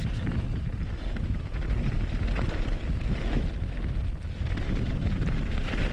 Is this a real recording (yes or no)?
yes